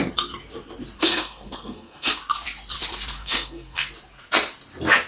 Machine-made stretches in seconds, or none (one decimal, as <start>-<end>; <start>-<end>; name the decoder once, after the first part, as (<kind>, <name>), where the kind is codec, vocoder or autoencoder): 1.0-2.2 (codec, SNAC); 3.2-3.9